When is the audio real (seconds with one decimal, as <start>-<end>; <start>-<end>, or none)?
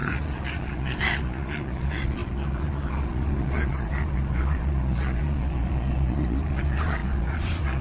none